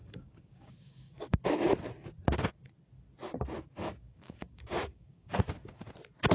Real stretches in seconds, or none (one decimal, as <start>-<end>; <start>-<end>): 1.4-3.8; 5.4-6.3